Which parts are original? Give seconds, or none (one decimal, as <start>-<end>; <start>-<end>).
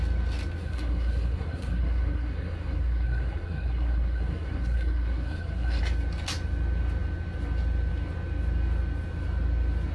0.0-0.6; 5.8-9.9